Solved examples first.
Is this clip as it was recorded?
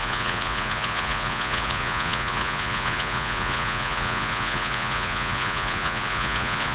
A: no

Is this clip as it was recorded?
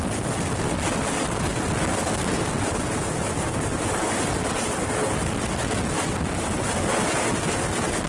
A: yes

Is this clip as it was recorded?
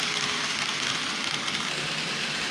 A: yes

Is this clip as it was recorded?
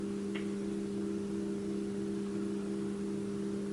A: yes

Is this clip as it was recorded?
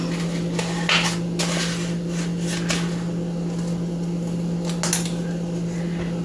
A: yes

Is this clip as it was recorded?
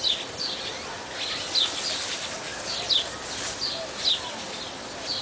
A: yes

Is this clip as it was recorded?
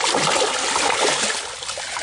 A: yes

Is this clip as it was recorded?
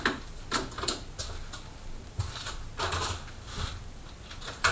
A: yes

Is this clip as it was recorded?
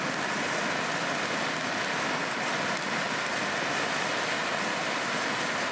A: yes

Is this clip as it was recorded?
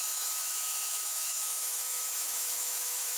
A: no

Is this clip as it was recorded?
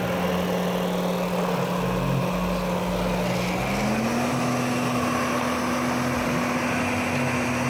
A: yes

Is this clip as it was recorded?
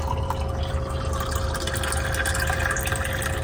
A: yes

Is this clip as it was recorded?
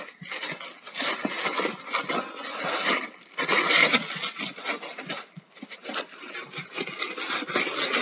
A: yes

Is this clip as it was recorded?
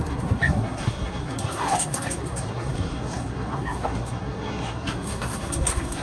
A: no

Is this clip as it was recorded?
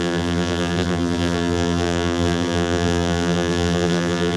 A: no